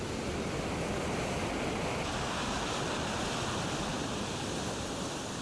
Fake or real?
real